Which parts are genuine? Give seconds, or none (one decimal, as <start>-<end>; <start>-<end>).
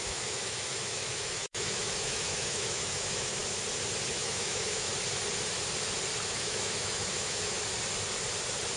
3.4-4.1; 4.9-6.3; 7.6-8.8